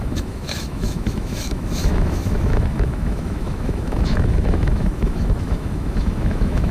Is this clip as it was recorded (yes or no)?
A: no